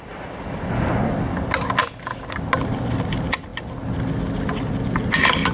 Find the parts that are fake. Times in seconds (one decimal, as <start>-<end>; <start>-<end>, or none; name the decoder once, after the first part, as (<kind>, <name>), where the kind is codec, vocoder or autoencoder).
none